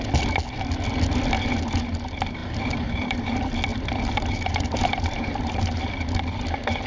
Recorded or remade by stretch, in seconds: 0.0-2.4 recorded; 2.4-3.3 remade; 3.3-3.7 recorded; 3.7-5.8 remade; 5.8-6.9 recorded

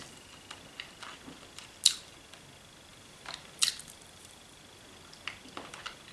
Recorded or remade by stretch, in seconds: 0.0-2.9 recorded; 2.9-4.6 remade; 4.6-6.1 recorded

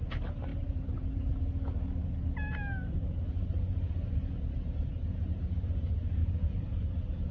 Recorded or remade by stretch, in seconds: 0.0-0.5 recorded; 0.5-1.4 remade; 1.4-4.9 recorded; 4.9-5.4 remade; 5.4-6.2 recorded; 6.2-7.3 remade

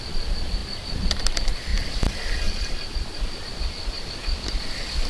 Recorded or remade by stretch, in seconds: 0.0-5.1 recorded

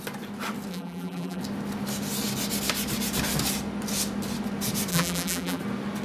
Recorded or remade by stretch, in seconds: 0.0-0.7 recorded; 0.7-1.4 remade; 1.4-4.9 recorded; 4.9-5.6 remade; 5.6-6.0 recorded

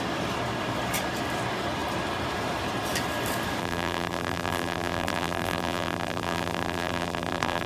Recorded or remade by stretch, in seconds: 0.0-3.6 recorded; 3.6-7.7 remade

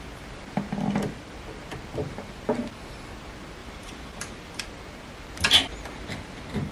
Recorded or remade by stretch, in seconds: 0.0-3.6 recorded; 3.6-4.6 remade; 4.6-6.7 recorded

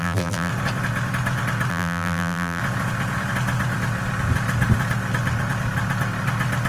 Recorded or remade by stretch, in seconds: 0.0-0.5 remade; 0.5-1.7 recorded; 1.7-2.6 remade; 2.6-6.7 recorded